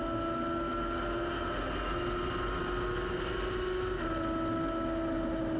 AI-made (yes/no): no